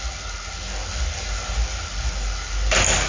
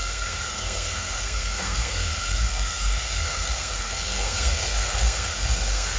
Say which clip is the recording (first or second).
first